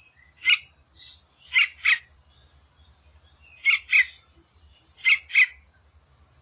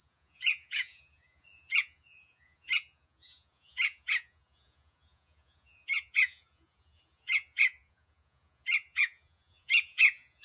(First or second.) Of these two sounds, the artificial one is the second